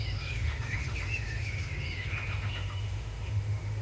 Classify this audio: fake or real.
fake